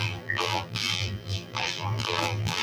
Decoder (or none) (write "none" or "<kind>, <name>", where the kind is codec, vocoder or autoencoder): vocoder, BigVGAN v2